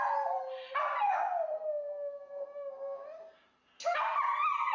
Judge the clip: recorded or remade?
recorded